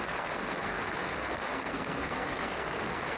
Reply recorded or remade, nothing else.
remade